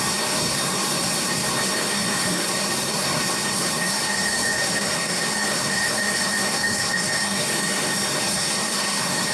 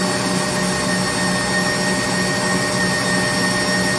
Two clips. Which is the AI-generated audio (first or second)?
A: first